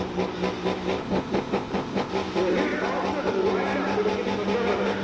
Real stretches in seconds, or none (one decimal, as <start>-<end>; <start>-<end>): 0.0-1.0; 2.1-5.0